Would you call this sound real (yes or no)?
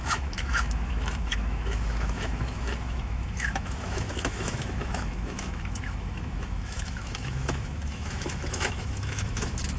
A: no